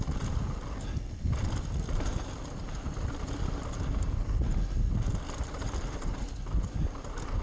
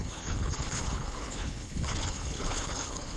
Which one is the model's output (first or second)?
second